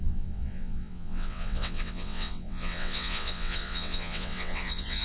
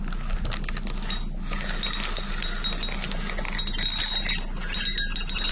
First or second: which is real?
second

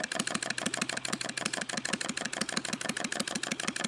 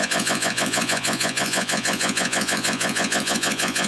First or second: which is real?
first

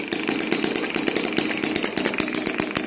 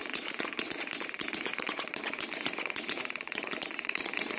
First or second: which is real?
first